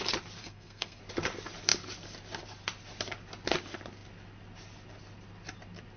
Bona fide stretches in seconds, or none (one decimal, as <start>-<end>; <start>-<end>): 0.0-0.4; 1.0-6.0